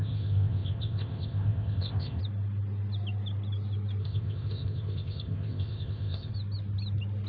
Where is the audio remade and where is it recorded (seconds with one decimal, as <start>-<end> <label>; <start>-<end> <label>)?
0.0-2.2 remade; 2.2-4.0 recorded; 4.0-6.3 remade; 6.3-7.3 recorded